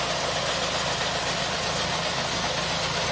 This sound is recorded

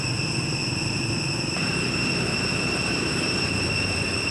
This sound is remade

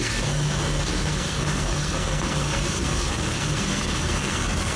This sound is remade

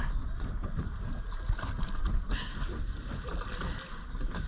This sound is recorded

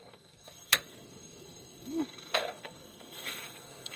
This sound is remade